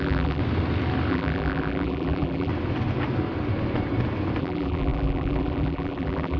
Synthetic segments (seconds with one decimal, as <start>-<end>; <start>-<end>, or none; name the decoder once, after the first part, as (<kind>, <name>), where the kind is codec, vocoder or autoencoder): 0.0-0.4 (vocoder, BigVGAN v2); 1.1-2.5; 4.4-6.4